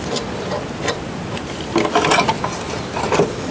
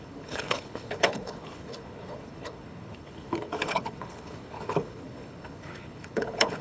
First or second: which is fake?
second